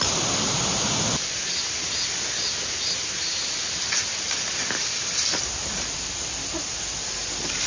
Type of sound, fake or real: real